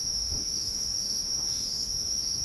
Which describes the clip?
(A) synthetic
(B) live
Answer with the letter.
A